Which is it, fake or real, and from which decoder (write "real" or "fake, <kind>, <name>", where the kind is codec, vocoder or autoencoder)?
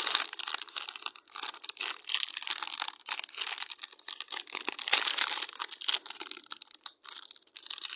real